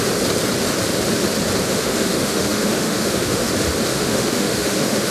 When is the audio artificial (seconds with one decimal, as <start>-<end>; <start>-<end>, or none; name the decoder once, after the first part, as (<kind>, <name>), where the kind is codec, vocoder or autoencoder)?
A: 1.7-3.5 (autoencoder, DAC-VAE); 3.9-5.1